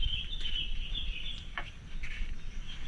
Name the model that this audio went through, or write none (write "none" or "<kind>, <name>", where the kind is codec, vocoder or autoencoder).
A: vocoder, BigVGAN v2